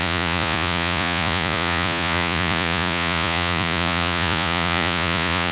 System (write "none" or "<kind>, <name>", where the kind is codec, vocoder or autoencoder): vocoder, Vocos